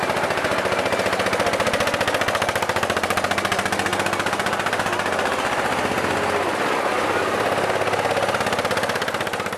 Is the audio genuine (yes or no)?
yes